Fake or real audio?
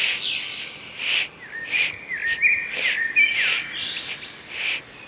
real